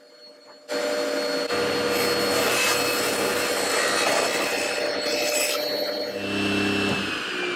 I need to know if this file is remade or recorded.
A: recorded